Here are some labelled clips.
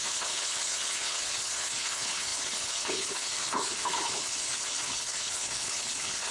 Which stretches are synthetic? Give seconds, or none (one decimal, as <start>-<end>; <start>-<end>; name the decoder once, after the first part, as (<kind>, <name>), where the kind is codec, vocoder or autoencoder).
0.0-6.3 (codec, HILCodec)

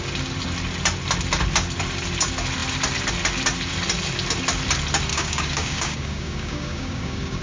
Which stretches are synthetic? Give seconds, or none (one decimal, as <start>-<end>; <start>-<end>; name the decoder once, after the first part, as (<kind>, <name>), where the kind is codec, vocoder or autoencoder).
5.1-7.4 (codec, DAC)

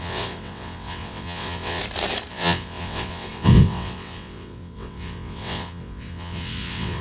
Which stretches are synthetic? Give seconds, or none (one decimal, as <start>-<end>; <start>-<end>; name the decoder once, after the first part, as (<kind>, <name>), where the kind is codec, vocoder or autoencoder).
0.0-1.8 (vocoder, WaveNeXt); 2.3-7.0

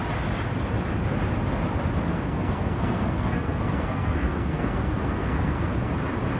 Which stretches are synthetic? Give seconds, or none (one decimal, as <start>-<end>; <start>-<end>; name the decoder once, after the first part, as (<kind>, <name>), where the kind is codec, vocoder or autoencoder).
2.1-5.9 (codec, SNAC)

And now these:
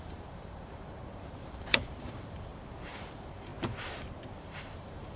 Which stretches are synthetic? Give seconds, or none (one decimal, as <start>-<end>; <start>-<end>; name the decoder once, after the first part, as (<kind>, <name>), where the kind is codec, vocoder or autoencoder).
0.0-2.5 (vocoder, BigVGAN v2); 3.0-3.5; 4.4-5.2

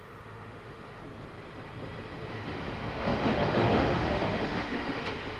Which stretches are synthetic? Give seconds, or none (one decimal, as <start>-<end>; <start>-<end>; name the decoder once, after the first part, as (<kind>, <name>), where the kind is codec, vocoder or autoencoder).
0.0-1.0 (autoencoder, DAC-VAE); 2.3-5.4

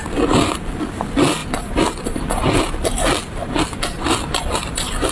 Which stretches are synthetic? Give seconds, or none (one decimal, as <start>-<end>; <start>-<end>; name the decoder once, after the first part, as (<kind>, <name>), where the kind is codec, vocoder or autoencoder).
none